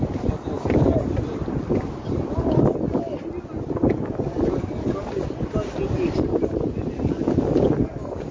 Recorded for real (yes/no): yes